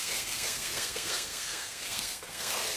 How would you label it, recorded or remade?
remade